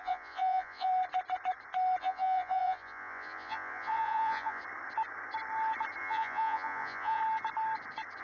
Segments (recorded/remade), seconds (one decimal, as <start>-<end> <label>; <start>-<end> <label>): 0.0-0.9 remade; 0.9-2.0 recorded; 2.0-4.6 remade; 4.6-6.0 recorded; 6.0-7.2 remade; 7.2-8.2 recorded